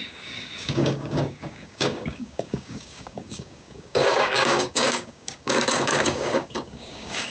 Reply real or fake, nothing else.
fake